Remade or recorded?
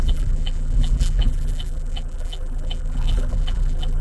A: remade